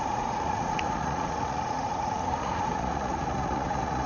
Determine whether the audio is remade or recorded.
remade